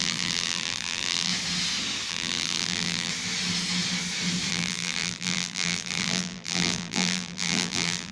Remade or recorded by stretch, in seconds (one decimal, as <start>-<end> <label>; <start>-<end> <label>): 0.0-1.3 remade; 1.3-2.1 recorded; 2.1-3.1 remade; 3.1-4.5 recorded; 4.5-8.1 remade